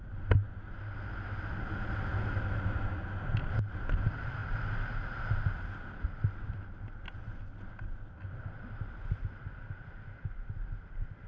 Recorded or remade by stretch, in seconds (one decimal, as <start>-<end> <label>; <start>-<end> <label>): 0.0-11.3 recorded